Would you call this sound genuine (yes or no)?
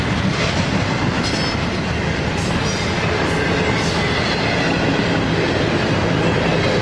yes